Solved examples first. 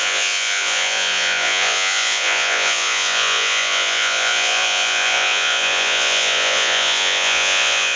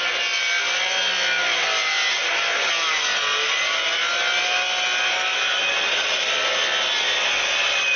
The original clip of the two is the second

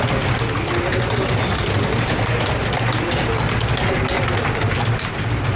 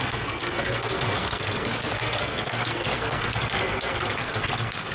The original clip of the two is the first